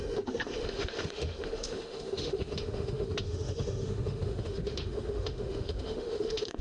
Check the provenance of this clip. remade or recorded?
remade